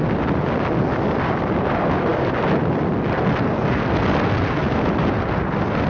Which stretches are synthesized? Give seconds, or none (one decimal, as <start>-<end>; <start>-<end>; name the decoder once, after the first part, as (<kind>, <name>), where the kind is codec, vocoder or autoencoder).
none